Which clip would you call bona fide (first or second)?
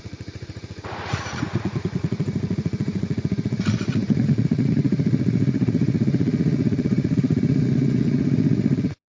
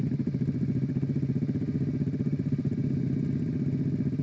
second